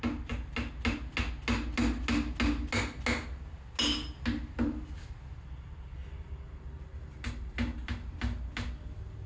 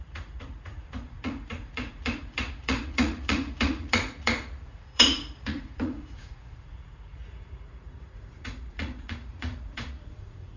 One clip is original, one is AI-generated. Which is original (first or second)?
first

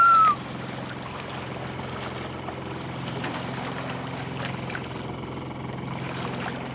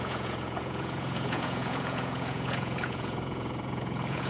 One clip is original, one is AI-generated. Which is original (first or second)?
first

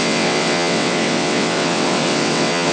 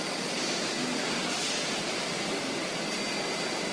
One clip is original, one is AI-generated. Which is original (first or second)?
second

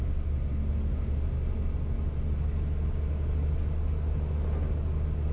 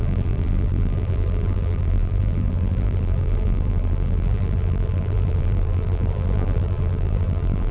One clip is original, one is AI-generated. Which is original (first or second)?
first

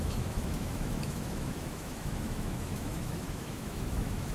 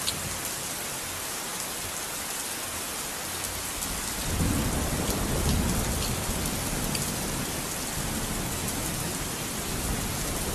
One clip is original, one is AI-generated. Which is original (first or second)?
second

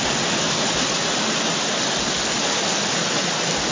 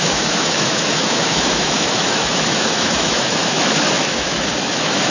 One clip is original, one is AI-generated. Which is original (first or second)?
first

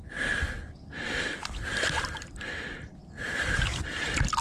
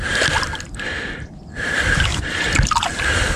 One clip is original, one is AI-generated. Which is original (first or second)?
first